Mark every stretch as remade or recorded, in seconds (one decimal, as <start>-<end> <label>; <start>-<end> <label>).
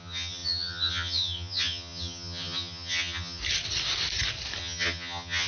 0.0-3.4 remade; 3.4-4.6 recorded; 4.6-5.5 remade